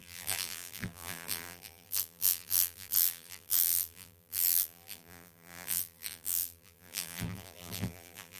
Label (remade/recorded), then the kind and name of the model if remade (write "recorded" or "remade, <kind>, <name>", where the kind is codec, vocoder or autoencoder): remade, vocoder, BigVGAN v2